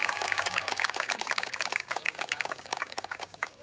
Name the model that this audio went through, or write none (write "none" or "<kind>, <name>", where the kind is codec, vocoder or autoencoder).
codec, DAC